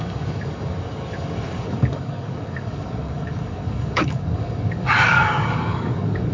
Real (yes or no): no